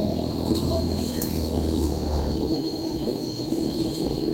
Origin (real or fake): fake